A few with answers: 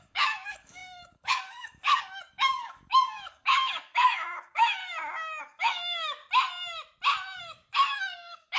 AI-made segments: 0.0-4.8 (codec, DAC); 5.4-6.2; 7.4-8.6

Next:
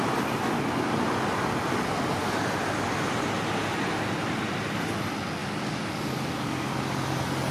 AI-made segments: 5.4-6.7 (codec, DAC)

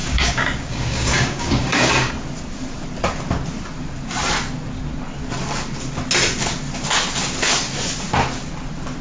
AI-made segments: 0.0-2.1 (codec, DAC)

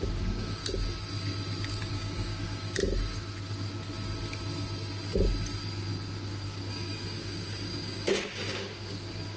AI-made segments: 0.0-0.6 (codec, DAC); 1.8-2.8; 6.3-9.4

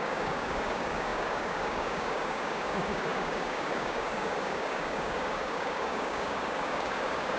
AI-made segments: 0.0-7.4 (codec, DAC)

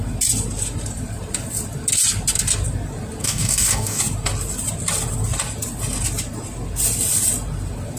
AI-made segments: 3.2-4.0 (codec, DAC)